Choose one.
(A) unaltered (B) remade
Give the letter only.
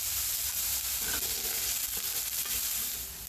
A